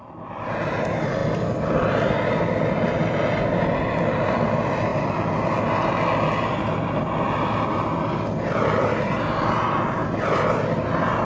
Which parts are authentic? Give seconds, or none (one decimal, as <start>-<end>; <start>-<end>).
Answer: 0.0-11.2